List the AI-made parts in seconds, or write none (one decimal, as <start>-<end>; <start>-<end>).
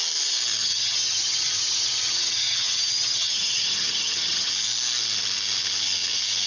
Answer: 0.6-4.5